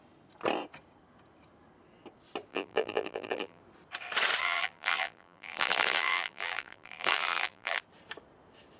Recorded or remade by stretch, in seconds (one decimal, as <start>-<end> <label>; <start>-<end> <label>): 0.0-2.5 recorded; 2.5-3.6 remade; 3.6-4.4 recorded; 4.4-7.8 remade; 7.8-8.8 recorded